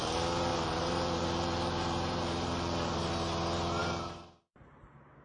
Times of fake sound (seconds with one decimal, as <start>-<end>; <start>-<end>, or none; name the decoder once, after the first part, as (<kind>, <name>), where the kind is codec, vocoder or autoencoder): 0.5-3.1 (vocoder, BigVGAN v2); 3.8-4.4